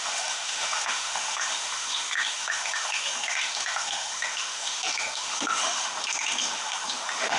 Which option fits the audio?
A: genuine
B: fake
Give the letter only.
B